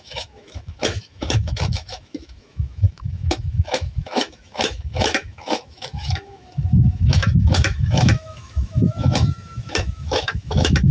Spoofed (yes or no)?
yes